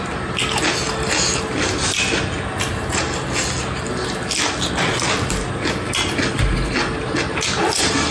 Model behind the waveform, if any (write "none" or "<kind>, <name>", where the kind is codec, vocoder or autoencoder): none